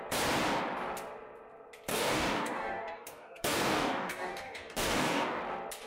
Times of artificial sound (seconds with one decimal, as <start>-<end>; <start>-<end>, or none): 1.9-5.4